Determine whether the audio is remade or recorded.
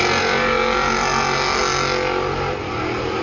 recorded